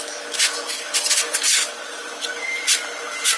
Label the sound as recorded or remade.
recorded